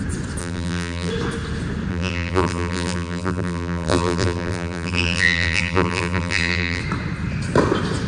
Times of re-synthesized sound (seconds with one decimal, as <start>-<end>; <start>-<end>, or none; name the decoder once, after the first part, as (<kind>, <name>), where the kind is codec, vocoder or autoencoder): 0.4-1.1 (vocoder, BigVGAN v2); 1.9-6.8